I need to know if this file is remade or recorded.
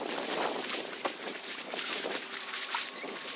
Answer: remade